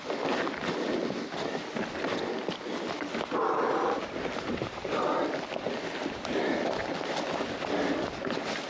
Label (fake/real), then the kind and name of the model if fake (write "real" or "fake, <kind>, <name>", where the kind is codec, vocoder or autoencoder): real